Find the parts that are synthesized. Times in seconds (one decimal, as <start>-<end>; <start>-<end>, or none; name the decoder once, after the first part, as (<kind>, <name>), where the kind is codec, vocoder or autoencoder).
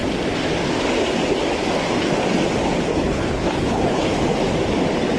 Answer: 2.9-4.1 (codec, HILCodec)